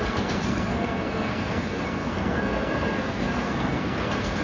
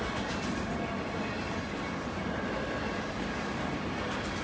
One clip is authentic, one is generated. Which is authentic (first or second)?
second